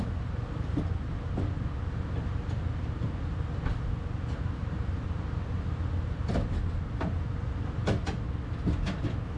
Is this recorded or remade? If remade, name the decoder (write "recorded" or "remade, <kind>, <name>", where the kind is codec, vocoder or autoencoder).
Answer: recorded